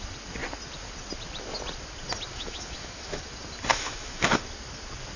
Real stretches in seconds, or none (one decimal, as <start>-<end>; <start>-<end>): 0.0-2.3; 3.2-3.7; 4.3-5.2